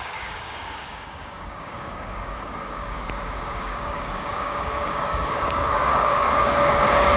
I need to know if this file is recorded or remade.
remade